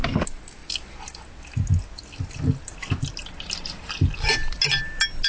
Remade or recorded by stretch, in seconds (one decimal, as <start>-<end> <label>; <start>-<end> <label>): 0.0-5.3 recorded